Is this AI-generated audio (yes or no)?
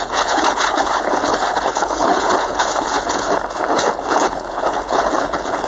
yes